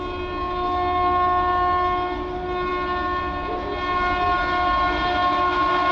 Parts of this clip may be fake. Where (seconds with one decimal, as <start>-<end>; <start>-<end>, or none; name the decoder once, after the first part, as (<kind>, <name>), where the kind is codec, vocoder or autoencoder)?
none